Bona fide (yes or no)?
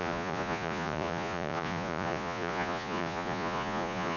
no